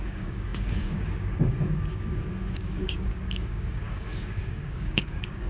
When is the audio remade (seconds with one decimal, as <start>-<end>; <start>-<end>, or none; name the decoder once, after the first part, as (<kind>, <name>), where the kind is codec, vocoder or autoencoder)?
0.0-5.5 (codec, DAC)